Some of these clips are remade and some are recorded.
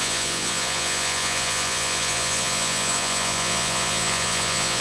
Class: remade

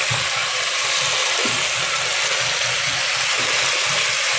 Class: recorded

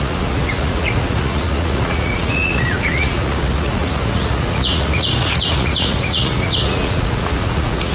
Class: remade